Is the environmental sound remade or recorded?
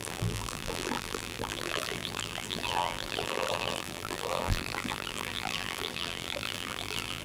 remade